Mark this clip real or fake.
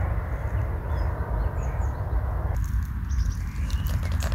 real